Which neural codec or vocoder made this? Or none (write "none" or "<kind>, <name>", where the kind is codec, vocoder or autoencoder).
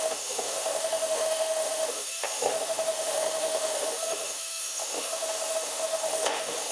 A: autoencoder, DAC-VAE